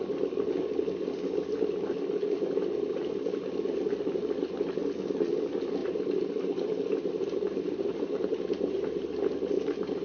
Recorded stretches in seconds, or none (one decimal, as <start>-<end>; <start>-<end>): 0.0-5.8; 9.3-10.0